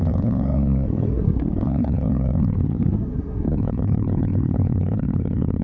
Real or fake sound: fake